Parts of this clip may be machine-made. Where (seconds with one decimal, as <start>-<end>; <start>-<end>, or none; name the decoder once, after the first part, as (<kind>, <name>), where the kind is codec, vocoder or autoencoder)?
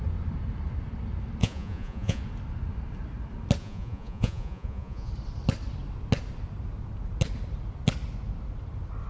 1.4-2.2 (vocoder, Vocos); 3.6-5.1